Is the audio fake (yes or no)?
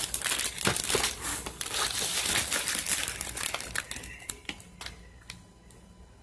no